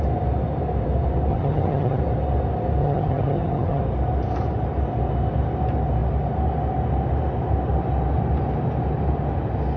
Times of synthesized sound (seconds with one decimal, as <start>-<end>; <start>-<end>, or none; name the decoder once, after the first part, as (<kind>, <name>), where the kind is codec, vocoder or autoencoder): 1.3-2.0 (vocoder, HiFi-GAN); 2.8-3.8